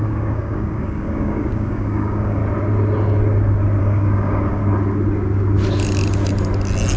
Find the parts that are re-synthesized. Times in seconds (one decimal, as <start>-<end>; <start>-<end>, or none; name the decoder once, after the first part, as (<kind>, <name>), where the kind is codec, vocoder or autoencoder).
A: 0.0-2.4 (codec, DAC); 3.8-4.6